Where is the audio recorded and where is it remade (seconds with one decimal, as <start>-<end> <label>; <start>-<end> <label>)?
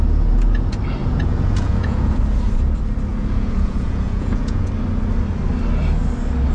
0.0-1.0 recorded; 1.0-2.2 remade; 2.2-3.1 recorded; 3.1-4.7 remade; 4.7-6.5 recorded